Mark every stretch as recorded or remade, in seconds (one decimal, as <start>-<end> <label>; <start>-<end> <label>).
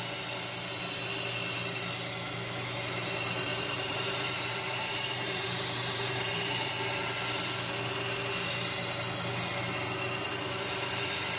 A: 0.0-3.5 recorded; 3.5-6.7 remade; 6.7-11.4 recorded